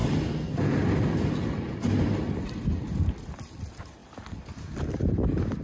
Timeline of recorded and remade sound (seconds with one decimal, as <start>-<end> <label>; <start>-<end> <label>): 0.0-5.6 recorded